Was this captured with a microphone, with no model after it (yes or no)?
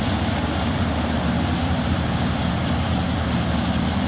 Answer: yes